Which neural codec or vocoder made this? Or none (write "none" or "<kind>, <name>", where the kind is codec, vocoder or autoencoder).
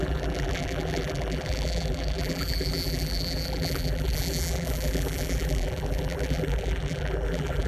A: vocoder, BigVGAN v2